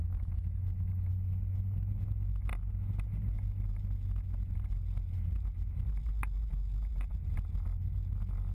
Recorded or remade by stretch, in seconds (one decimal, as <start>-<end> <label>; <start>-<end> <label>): 0.0-1.1 remade; 1.1-8.5 recorded